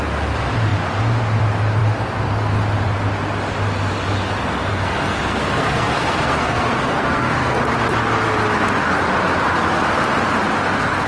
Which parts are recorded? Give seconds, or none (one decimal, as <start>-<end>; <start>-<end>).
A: 0.0-4.7; 7.6-11.1